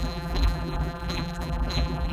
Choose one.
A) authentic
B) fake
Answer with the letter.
B